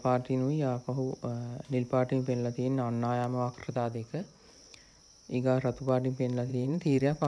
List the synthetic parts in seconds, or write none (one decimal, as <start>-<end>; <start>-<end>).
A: 3.6-5.0; 6.5-7.3